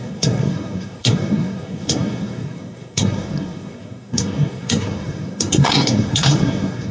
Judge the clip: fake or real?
fake